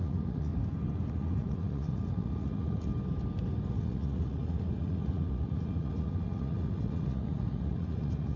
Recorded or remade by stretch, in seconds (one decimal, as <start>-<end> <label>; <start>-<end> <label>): 0.0-0.5 remade; 0.5-1.1 recorded; 1.1-2.9 remade; 2.9-3.7 recorded; 3.7-8.4 remade